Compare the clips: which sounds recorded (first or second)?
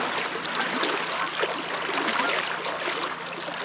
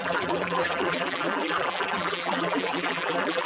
first